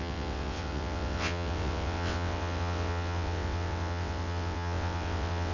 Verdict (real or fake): fake